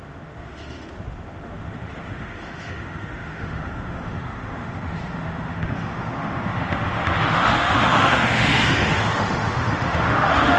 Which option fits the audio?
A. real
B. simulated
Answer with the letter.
B